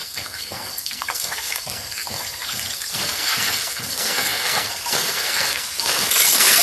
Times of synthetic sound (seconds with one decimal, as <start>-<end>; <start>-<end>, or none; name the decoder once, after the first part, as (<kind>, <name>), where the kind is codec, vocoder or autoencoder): 0.0-6.6 (codec, SNAC)